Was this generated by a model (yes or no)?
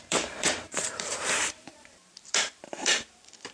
yes